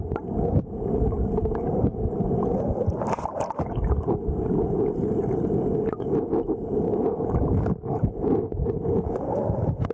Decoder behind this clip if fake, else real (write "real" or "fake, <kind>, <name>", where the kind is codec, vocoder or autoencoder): real